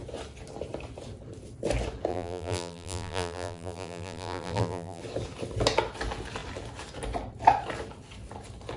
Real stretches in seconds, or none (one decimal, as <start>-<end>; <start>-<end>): 0.0-2.1; 5.0-8.8